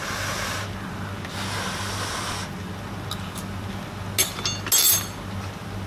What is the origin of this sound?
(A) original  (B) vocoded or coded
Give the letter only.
A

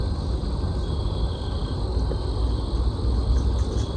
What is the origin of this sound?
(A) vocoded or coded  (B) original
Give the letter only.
B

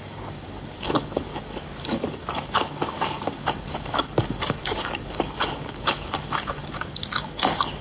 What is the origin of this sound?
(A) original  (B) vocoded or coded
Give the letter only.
B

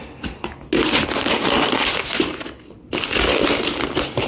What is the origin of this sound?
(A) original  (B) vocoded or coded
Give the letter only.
A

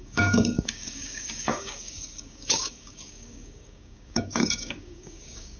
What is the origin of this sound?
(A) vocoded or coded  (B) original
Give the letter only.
A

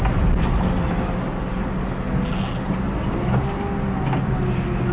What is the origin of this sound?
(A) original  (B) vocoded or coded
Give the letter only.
A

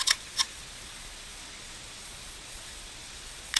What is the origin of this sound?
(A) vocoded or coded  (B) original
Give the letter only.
A